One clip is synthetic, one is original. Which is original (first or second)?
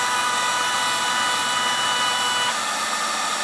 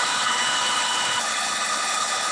first